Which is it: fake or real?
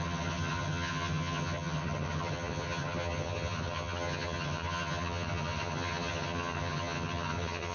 fake